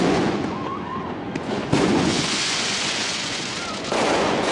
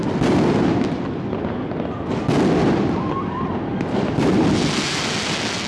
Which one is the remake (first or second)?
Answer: first